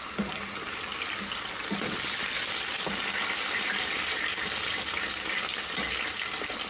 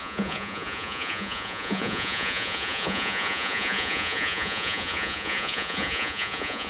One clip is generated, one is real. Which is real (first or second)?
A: first